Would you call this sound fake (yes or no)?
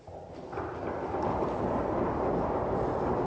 no